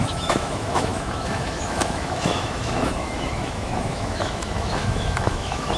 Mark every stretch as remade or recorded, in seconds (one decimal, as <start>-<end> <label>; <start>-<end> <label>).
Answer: 0.0-5.8 remade